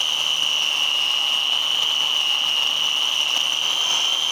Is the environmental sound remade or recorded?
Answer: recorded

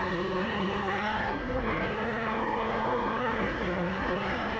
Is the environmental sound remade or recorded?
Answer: remade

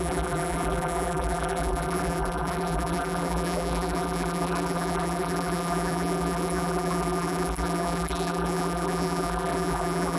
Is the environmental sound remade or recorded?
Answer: remade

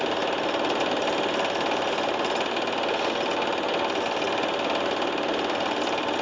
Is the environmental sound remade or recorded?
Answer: recorded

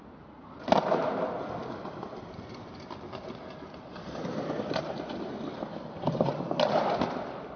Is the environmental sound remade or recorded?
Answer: recorded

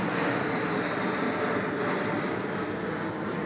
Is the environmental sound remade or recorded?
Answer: recorded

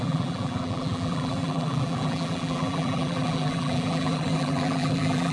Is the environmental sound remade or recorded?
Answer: remade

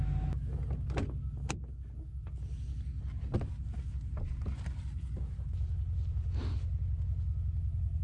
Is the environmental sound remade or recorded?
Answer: recorded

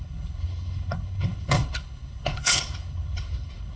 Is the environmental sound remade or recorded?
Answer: remade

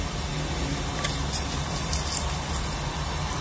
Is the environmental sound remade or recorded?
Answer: recorded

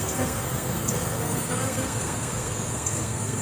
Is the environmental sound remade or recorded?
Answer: remade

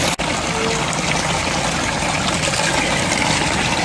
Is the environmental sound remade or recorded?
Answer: recorded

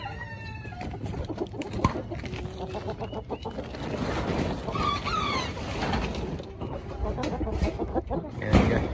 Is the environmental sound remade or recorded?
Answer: recorded